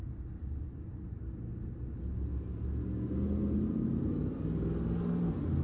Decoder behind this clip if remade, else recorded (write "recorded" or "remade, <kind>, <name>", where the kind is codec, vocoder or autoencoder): recorded